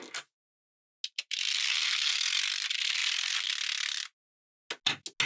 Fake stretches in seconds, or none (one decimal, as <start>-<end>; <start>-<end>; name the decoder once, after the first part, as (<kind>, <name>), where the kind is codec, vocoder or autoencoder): 1.7-2.4 (codec, SNAC)